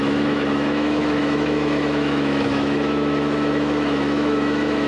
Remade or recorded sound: remade